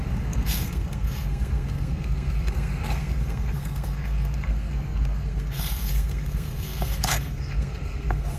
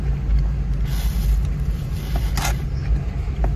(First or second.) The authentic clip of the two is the second